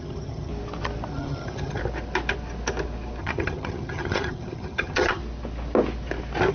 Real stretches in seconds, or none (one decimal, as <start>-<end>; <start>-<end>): 0.5-1.1; 1.8-3.2; 5.2-6.5